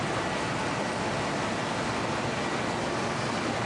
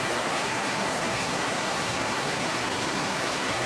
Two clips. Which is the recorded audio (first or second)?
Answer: first